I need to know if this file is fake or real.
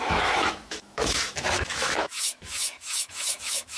fake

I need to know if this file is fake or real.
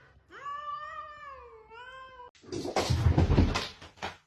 real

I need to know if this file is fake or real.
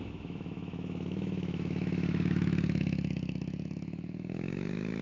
fake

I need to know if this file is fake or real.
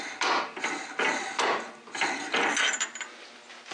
real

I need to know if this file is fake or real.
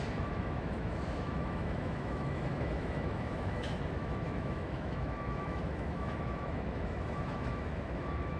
fake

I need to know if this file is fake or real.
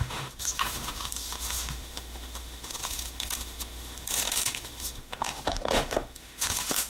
fake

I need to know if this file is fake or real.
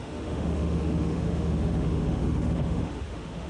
fake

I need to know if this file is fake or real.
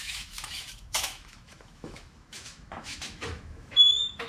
fake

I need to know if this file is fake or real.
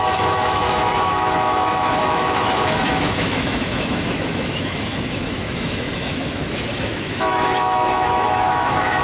fake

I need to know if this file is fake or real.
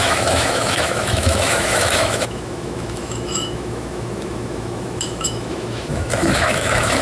fake